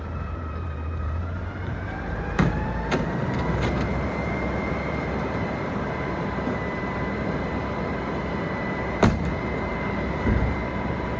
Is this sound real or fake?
fake